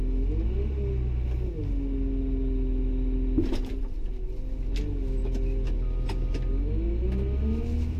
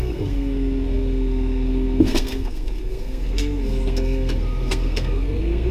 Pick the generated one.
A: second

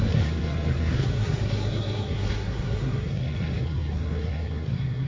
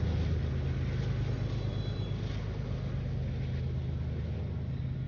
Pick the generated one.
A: first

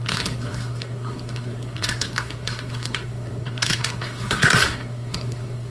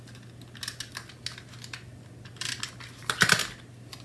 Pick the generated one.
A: first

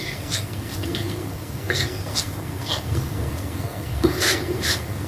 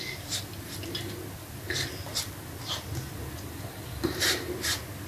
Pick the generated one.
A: first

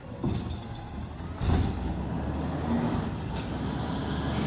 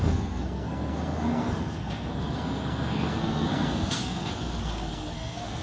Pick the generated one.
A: second